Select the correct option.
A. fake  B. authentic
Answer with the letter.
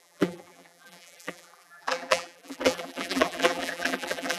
A